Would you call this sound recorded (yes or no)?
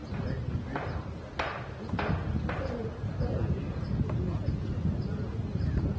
yes